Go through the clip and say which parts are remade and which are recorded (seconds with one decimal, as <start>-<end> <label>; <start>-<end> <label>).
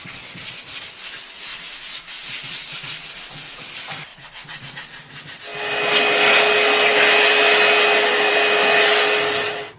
0.0-1.5 recorded; 1.5-3.6 remade; 3.6-4.1 recorded; 4.1-5.0 remade; 5.0-9.8 recorded